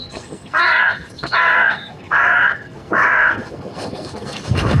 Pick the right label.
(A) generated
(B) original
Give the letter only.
A